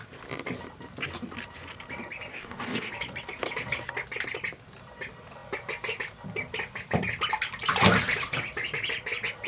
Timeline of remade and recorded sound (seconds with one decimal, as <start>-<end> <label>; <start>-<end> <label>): 0.0-2.3 recorded; 2.3-2.9 remade; 2.9-9.5 recorded